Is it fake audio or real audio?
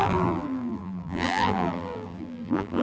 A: fake